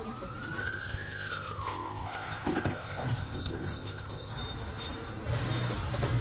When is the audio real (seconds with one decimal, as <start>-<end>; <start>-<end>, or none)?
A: 0.0-0.6; 4.3-6.2